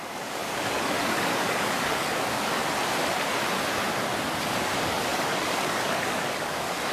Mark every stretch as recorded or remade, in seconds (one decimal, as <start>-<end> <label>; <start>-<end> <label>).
0.0-2.6 remade; 2.6-4.6 recorded; 4.6-6.9 remade